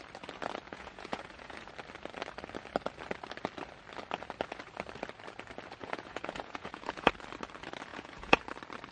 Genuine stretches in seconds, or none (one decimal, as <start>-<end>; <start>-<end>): 0.0-0.7; 1.7-5.8; 7.1-7.9; 8.4-8.9